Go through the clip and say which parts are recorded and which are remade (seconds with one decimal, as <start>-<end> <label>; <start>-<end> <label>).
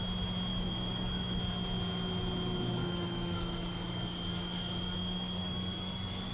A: 0.0-0.5 recorded; 0.5-1.4 remade; 1.4-2.8 recorded; 2.8-6.3 remade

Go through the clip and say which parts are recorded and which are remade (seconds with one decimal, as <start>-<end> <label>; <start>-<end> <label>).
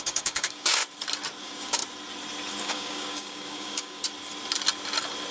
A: 0.0-0.8 remade; 0.8-1.4 recorded; 1.4-1.8 remade; 1.8-2.6 recorded; 2.6-4.0 remade; 4.0-5.3 recorded